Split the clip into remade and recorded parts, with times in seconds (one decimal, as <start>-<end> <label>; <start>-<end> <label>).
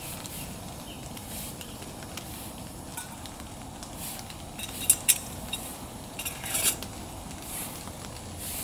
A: 0.0-1.2 recorded; 1.2-1.8 remade; 1.8-8.6 recorded